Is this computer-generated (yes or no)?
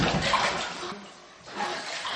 no